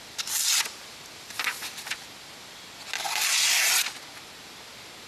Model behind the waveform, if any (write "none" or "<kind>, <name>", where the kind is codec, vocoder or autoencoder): none